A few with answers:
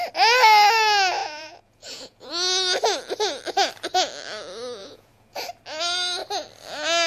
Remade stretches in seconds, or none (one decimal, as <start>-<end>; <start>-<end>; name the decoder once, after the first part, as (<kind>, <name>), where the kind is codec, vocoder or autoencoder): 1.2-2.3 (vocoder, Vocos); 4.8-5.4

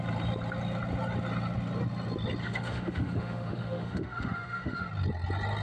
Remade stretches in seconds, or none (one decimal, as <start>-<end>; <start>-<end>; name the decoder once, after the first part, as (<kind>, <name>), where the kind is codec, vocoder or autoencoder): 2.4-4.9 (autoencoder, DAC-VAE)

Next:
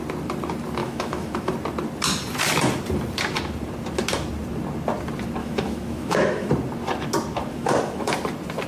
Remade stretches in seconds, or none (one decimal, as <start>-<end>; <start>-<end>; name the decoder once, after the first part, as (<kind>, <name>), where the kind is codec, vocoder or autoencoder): 0.8-1.5 (autoencoder, DAC-VAE); 5.4-6.5; 7.5-8.1

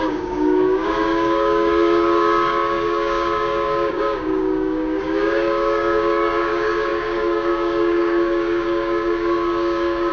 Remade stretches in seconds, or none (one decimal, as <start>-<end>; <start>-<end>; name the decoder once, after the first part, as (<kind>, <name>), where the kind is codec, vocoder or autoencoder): 0.0-10.1 (codec, DAC)

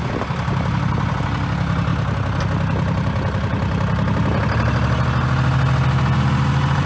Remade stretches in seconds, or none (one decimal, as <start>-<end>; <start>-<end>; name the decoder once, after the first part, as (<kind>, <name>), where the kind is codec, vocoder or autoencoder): none

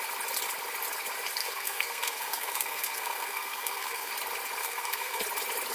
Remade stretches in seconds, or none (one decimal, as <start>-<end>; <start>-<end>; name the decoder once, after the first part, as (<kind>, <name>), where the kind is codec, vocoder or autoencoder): 1.4-4.1 (codec, SNAC); 4.6-5.2

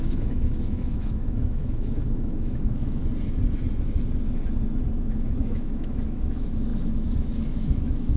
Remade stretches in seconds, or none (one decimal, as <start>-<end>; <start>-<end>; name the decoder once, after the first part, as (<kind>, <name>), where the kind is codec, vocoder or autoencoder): 0.0-3.0 (autoencoder, DAC-VAE); 5.0-8.2

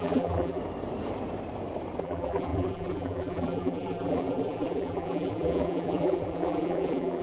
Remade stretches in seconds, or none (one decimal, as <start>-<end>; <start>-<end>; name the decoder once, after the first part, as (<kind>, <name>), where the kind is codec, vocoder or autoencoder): 0.0-0.6 (vocoder, BigVGAN v2); 2.0-7.2